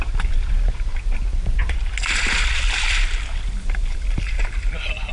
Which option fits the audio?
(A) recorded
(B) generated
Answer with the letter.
A